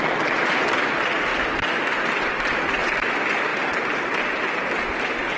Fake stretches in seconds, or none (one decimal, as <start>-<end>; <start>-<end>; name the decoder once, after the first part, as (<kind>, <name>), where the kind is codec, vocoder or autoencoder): none